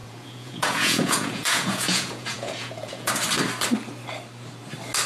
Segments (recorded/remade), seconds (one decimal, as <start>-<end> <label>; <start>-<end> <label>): 0.0-3.1 remade; 3.1-5.1 recorded